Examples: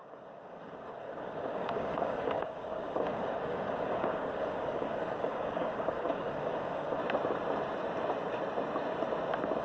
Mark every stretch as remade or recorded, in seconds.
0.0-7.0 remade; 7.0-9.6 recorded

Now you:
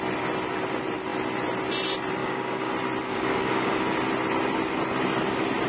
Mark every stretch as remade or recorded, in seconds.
0.0-2.2 recorded; 2.2-2.7 remade; 2.7-3.1 recorded; 3.1-3.8 remade; 3.8-5.7 recorded

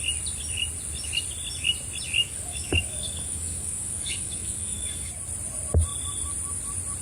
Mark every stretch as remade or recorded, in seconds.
0.0-2.2 recorded; 2.2-5.1 remade; 5.1-7.0 recorded